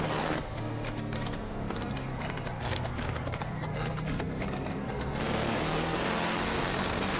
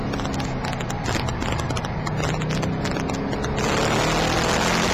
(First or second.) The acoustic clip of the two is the second